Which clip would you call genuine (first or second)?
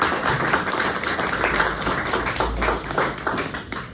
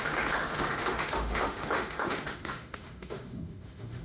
first